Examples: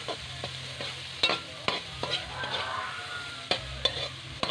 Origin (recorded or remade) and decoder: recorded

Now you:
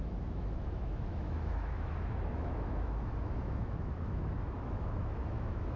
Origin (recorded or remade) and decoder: remade, autoencoder, DAC-VAE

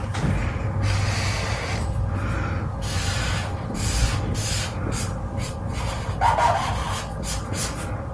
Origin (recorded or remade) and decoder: recorded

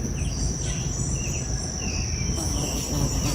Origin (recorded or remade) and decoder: recorded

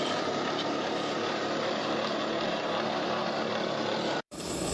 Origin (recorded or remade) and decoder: recorded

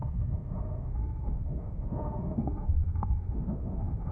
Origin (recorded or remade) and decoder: remade, autoencoder, DAC-VAE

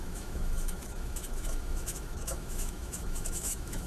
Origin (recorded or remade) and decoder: remade, autoencoder, DAC-VAE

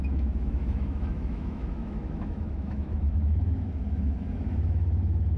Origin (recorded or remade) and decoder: remade, autoencoder, DAC-VAE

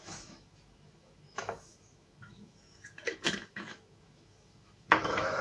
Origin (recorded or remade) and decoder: remade, autoencoder, DAC-VAE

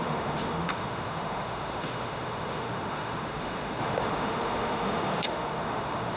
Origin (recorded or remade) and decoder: remade, autoencoder, DAC-VAE